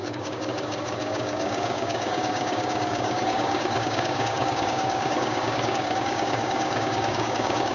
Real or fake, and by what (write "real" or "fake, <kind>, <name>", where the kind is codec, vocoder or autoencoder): fake, codec, DAC